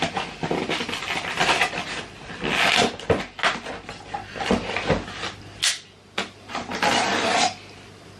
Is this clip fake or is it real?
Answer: real